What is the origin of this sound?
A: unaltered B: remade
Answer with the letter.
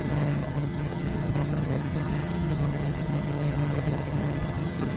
B